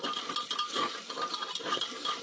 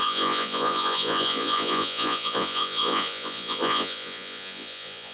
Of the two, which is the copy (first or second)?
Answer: second